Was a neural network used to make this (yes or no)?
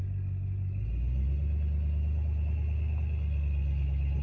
no